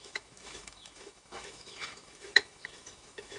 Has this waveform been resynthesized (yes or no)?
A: yes